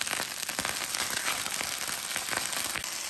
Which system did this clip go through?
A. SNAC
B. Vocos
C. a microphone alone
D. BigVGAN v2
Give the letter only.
C